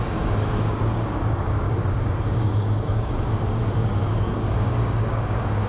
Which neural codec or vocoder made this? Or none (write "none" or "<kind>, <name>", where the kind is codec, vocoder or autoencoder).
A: codec, DAC